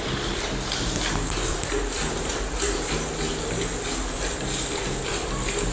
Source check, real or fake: real